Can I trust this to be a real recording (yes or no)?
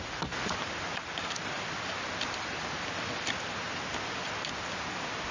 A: yes